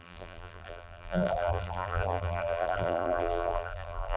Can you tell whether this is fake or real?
fake